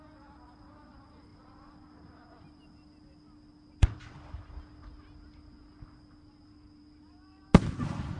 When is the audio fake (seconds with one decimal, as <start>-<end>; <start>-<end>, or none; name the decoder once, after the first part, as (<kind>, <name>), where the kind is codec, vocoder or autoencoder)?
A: none